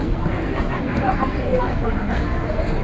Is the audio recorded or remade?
remade